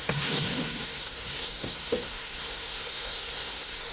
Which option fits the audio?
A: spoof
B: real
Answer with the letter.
A